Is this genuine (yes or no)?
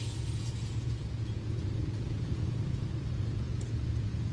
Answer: no